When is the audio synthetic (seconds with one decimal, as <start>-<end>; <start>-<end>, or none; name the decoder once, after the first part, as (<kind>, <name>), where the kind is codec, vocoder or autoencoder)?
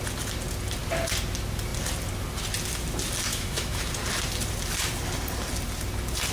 3.3-3.9 (autoencoder, DAC-VAE)